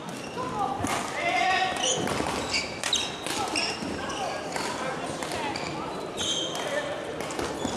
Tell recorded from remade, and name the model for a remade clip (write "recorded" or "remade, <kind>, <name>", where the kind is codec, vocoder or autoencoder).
recorded